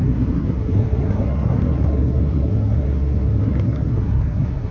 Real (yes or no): no